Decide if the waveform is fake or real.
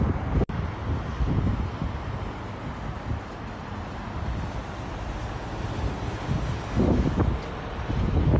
real